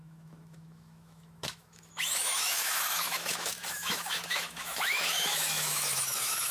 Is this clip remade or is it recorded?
remade